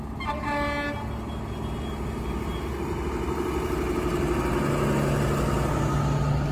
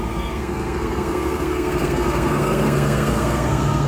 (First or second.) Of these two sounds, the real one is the first